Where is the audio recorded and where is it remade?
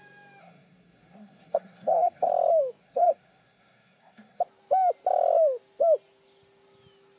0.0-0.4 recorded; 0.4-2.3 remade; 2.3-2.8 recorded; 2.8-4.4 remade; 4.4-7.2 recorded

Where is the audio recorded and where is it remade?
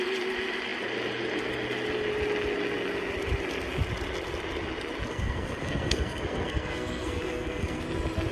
0.0-5.1 recorded; 5.1-7.8 remade; 7.8-8.3 recorded